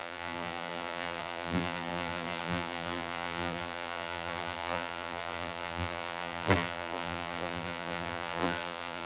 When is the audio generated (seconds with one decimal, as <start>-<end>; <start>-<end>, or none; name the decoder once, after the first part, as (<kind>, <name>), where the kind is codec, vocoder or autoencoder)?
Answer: 0.0-9.1 (vocoder, BigVGAN v2)